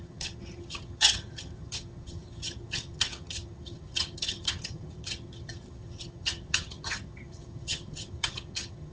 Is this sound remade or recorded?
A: remade